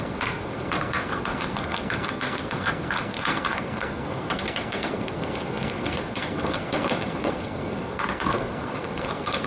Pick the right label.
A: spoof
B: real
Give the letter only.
A